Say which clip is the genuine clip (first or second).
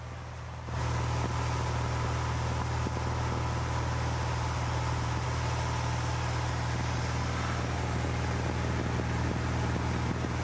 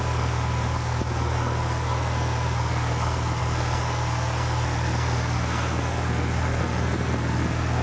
first